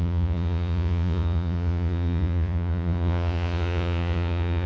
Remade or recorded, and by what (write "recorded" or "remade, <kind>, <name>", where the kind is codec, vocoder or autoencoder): remade, vocoder, Vocos